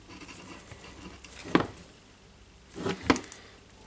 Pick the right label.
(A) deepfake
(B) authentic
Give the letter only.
B